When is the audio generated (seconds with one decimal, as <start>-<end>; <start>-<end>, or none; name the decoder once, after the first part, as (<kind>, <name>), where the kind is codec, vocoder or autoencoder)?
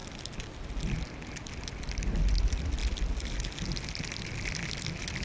none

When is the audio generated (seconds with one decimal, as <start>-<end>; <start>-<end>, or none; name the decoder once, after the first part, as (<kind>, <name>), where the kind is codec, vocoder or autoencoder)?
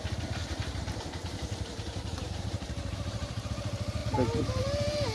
0.4-3.5 (vocoder, BigVGAN v2)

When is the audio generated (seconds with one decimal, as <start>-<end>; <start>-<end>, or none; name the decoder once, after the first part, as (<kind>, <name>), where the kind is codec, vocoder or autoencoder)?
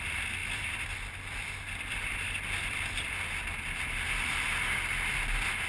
0.4-3.8 (vocoder, BigVGAN v2)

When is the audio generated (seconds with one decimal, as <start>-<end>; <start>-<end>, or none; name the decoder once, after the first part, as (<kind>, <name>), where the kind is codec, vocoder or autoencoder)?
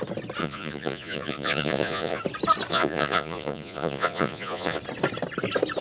0.4-2.2 (vocoder, Vocos); 2.7-4.8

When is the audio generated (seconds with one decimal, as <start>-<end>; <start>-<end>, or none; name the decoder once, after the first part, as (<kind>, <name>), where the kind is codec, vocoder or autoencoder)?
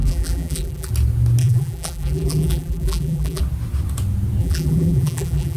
0.0-0.9 (vocoder, BigVGAN v2); 1.4-3.4; 4.4-5.6